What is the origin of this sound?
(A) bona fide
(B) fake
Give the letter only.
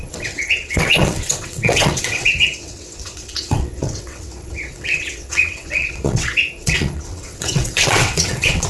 B